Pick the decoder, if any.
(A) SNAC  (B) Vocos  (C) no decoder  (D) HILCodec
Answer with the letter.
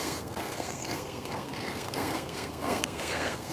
A